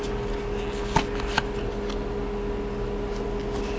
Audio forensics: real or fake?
real